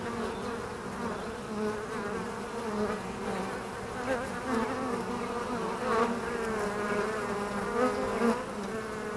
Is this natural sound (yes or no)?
yes